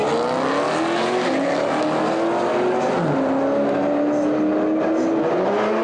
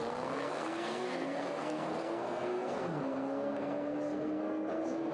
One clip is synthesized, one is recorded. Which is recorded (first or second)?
first